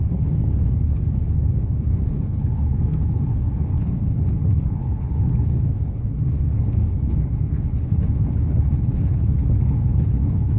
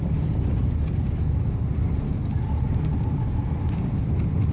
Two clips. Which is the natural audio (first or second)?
second